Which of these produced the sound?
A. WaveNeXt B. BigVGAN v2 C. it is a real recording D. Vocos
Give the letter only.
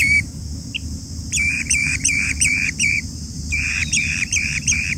B